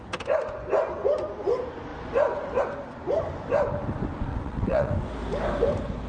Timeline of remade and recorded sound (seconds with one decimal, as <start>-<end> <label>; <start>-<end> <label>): 0.0-4.3 recorded; 4.3-4.9 remade; 4.9-6.1 recorded